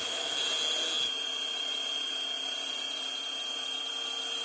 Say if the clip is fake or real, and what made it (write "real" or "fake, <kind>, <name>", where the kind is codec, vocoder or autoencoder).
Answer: real